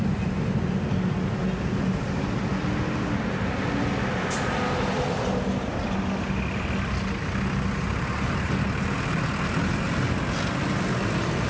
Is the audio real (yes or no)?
yes